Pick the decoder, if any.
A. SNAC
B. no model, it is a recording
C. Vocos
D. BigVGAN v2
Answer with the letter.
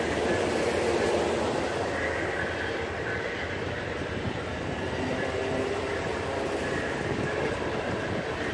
B